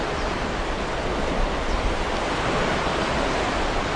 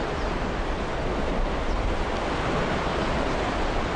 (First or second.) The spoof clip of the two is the first